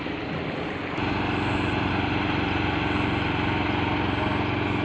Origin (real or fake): real